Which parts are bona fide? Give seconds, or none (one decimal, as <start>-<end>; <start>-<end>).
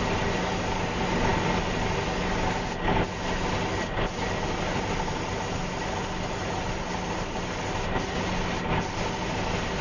0.0-9.8